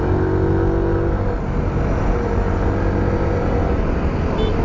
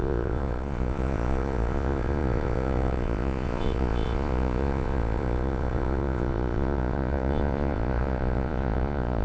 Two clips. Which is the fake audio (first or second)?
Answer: second